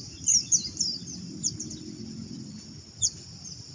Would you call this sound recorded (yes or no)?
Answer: yes